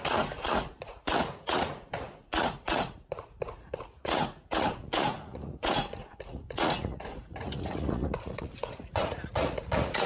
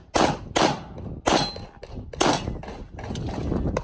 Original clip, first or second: second